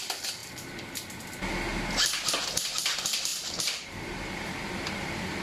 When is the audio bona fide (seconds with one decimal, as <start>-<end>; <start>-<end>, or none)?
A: 0.4-2.3